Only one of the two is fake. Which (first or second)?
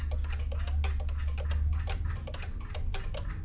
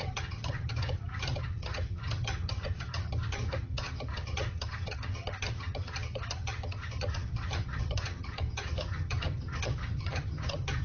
second